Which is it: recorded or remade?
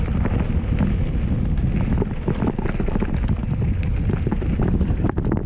recorded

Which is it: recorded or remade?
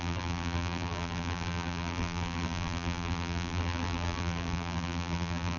remade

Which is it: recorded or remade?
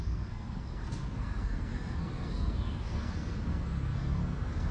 remade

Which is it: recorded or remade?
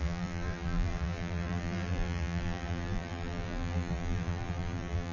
remade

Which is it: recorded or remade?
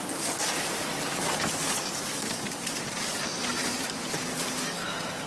recorded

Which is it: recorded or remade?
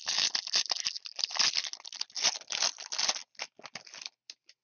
recorded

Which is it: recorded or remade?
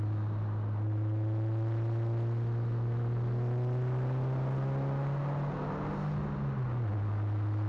recorded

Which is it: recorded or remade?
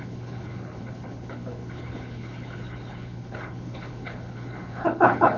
remade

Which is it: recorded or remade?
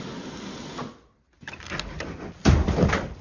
recorded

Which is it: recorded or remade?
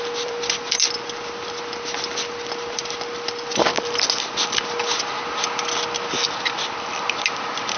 recorded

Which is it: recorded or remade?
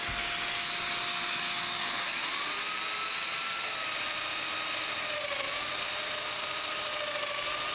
recorded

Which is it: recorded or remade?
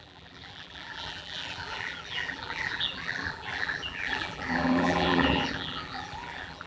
remade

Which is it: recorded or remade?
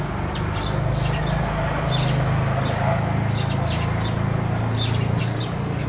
recorded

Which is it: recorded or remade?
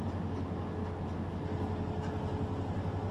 recorded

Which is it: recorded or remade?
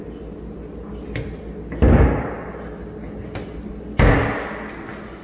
recorded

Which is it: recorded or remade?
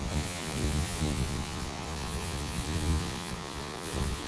remade